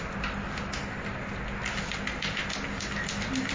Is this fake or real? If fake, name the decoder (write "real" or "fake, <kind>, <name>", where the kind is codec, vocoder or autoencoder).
real